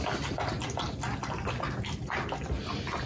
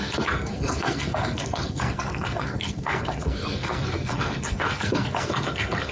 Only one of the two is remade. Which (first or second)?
second